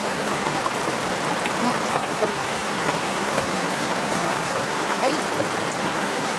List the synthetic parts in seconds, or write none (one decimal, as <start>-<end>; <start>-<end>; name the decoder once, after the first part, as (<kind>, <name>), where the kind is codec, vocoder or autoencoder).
0.0-0.6 (codec, SNAC); 1.9-5.1; 5.8-6.4